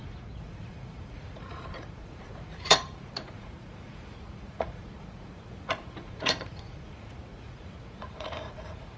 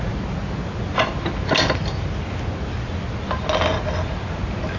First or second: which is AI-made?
first